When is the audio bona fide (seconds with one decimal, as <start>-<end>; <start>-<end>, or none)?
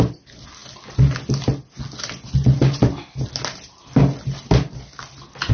0.0-5.5